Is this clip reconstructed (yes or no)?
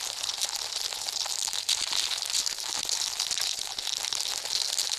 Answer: no